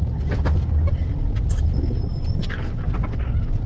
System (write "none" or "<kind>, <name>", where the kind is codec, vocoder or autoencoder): none